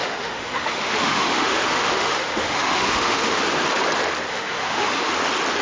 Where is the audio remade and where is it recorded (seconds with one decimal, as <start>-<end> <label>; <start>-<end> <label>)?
0.0-3.4 remade; 3.4-4.3 recorded; 4.3-5.1 remade; 5.1-5.6 recorded